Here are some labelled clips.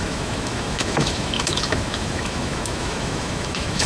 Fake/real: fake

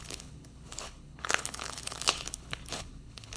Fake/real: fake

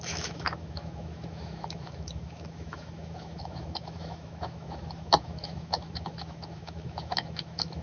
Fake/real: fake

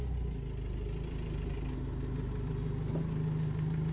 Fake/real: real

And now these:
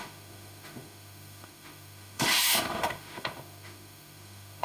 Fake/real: fake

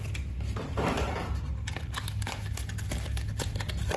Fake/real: real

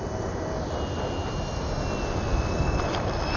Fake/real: real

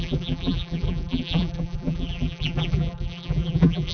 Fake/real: fake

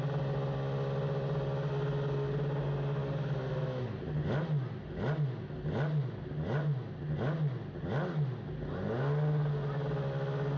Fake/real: real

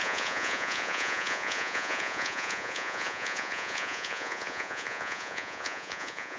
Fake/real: fake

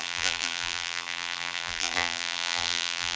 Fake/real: fake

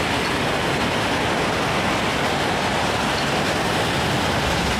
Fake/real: real